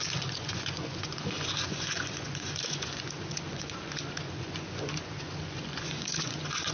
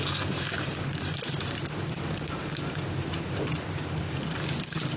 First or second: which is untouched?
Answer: second